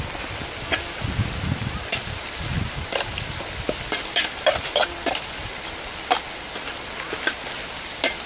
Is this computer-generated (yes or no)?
no